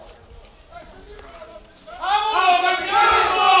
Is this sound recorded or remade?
recorded